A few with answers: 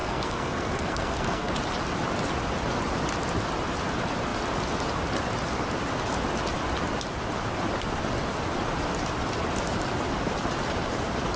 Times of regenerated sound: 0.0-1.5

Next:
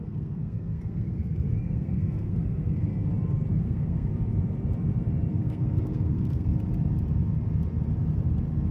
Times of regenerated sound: 0.0-2.9; 3.6-4.1; 5.3-6.5

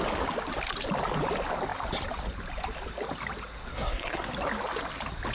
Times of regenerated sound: 3.7-4.3

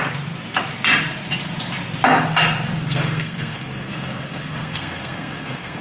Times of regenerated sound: 2.8-5.8

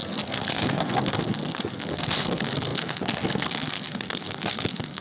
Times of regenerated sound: 0.0-5.0

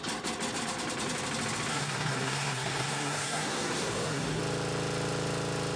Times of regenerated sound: 1.7-4.4

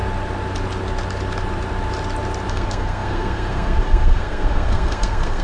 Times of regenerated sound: 2.5-5.4

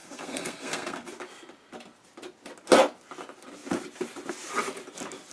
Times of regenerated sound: 0.0-1.1